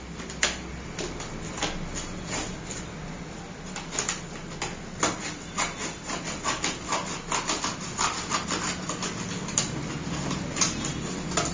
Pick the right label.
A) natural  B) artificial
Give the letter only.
A